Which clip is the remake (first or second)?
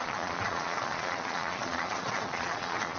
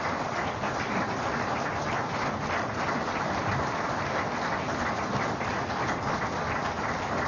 first